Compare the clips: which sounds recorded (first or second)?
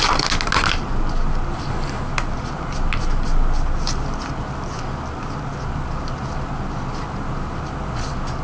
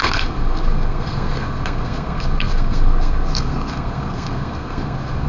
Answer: first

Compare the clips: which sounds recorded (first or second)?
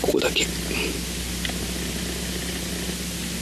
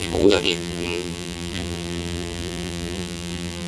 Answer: first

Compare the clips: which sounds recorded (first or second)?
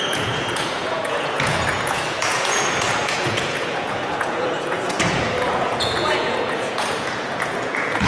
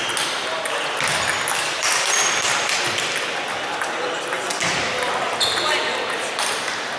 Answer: second